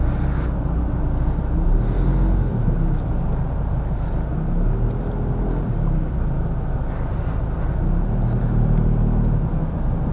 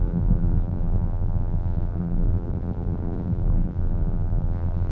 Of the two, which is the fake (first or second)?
second